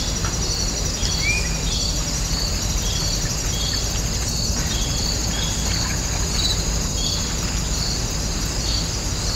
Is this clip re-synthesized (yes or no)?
no